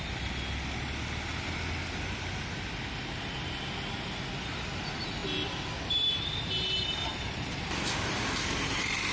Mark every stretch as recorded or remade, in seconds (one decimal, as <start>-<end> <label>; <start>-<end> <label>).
0.0-9.1 recorded